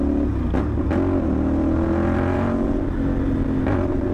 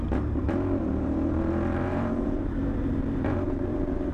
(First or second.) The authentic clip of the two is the first